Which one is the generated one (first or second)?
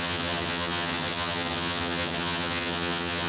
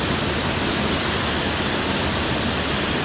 first